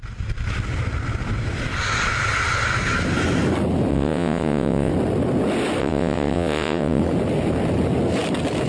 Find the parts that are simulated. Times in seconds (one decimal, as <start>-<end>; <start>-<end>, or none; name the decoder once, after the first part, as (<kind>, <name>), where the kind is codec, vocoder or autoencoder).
3.9-4.9 (vocoder, WaveNeXt); 5.8-7.0